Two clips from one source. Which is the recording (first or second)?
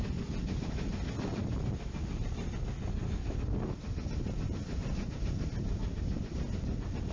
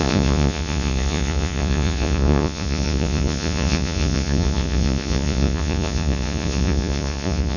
first